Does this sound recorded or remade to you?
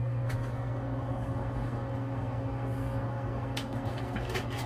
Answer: remade